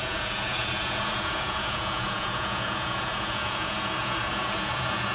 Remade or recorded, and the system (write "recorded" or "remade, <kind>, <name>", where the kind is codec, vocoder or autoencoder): remade, vocoder, Vocos